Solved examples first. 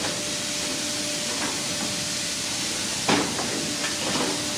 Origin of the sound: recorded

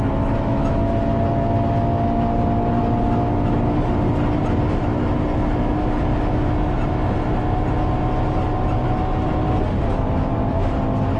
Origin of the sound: recorded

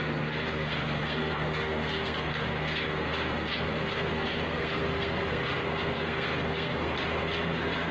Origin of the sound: remade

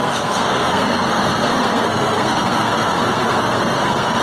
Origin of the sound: remade